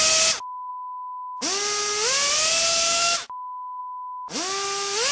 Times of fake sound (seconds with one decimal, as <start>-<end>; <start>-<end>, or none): 2.7-3.8